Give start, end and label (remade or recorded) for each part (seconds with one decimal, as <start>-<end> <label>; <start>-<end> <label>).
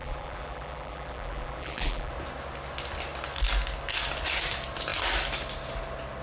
0.0-2.1 remade; 2.1-6.2 recorded